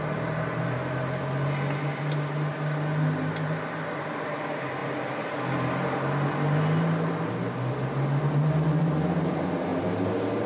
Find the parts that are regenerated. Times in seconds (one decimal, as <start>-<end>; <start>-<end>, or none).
none